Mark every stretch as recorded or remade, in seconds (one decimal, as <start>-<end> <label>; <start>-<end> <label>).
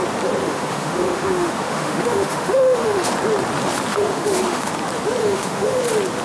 0.0-0.4 recorded; 0.4-3.1 remade; 3.1-3.9 recorded; 3.9-4.7 remade; 4.7-5.2 recorded; 5.2-5.8 remade; 5.8-6.2 recorded